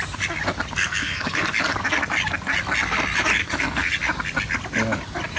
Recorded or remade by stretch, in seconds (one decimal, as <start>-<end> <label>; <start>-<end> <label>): 0.0-0.8 recorded; 0.8-1.5 remade; 1.5-3.4 recorded; 3.4-3.9 remade; 3.9-5.4 recorded